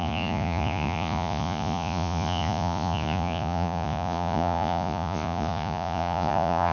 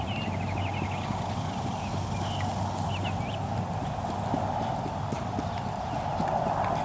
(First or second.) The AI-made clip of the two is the first